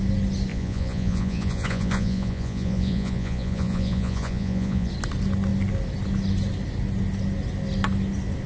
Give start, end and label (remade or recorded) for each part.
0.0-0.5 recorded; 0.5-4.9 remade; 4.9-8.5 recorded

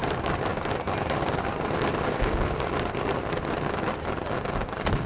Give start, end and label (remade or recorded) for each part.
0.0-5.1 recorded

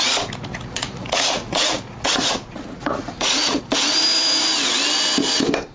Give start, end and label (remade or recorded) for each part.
0.0-0.5 recorded; 0.5-3.8 remade; 3.8-5.7 recorded